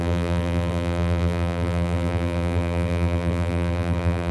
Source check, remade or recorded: remade